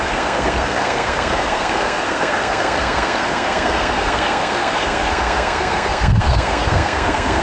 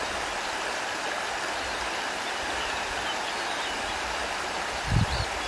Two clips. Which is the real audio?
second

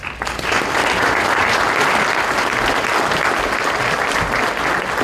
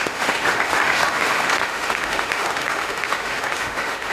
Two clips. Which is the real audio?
first